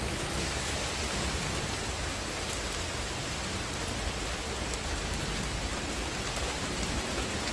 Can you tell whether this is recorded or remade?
recorded